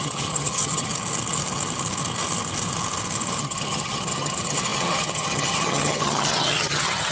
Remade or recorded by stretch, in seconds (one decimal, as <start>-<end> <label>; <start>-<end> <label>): 0.0-0.9 remade; 0.9-3.4 recorded; 3.4-7.1 remade